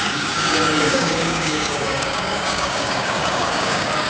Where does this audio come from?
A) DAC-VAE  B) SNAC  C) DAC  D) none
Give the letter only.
C